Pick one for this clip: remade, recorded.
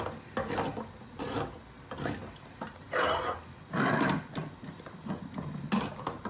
recorded